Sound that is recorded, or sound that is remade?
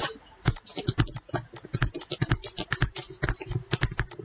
recorded